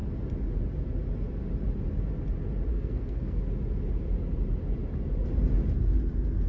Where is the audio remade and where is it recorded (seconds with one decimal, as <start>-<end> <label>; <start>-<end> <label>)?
0.0-2.7 recorded; 2.7-3.4 remade; 3.4-6.5 recorded